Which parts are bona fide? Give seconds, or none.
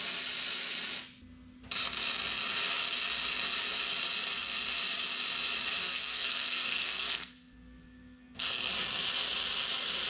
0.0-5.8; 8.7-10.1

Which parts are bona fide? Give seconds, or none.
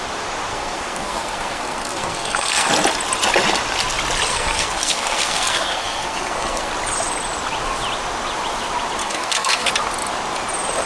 0.0-0.5; 2.7-4.3; 6.7-9.0; 9.7-10.9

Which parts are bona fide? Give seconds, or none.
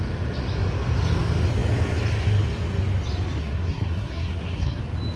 0.0-3.4; 4.8-5.2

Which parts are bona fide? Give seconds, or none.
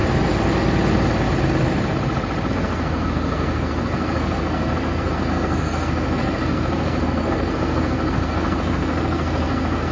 0.0-2.5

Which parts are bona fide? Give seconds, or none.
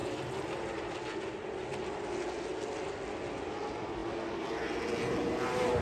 0.0-5.8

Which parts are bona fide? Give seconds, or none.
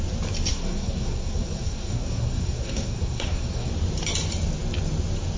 0.0-0.5; 3.7-5.4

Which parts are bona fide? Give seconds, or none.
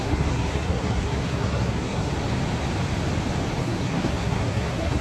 2.1-3.6